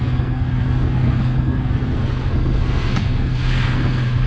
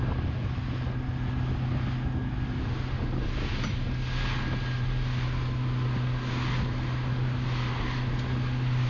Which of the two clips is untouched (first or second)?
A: second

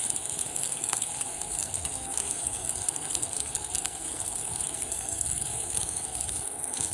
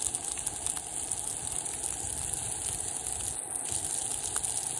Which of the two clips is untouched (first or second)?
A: second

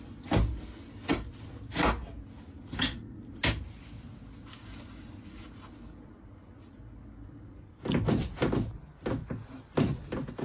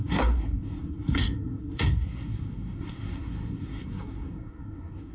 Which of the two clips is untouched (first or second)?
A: first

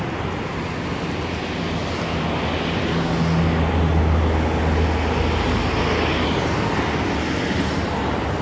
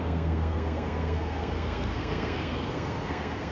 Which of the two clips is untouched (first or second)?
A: first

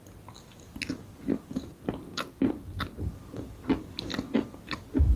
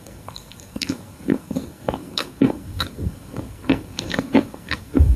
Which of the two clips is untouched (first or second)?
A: first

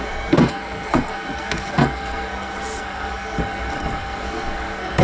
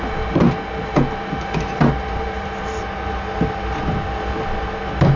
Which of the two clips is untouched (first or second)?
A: second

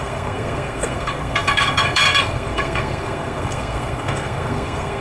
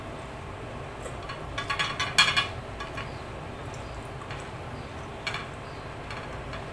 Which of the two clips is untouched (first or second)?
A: second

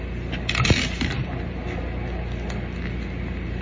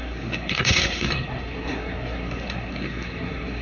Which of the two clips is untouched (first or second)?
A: first